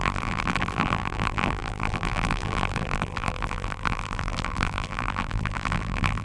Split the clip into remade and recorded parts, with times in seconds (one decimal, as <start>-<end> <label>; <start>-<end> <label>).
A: 0.0-6.2 remade